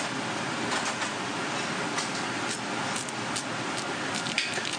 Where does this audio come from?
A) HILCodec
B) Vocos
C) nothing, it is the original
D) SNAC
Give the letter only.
C